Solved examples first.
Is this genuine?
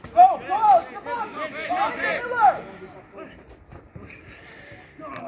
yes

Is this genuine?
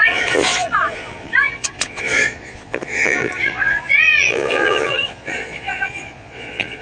no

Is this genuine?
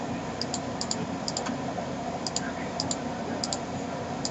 yes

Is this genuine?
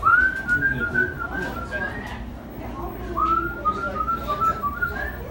yes